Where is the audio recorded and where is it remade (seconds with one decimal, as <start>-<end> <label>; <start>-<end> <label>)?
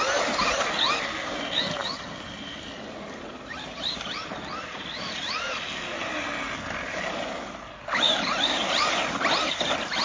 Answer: 0.0-10.0 recorded